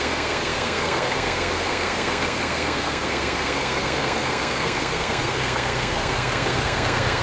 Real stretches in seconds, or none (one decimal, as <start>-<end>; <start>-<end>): none